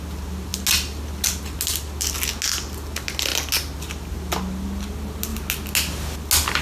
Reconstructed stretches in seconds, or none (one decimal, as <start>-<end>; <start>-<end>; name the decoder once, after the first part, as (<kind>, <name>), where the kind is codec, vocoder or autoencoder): none

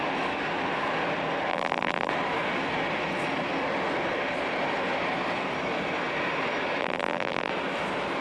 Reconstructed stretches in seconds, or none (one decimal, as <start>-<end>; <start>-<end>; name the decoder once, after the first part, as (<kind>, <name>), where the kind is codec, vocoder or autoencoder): 1.5-2.1 (vocoder, BigVGAN v2); 6.8-7.5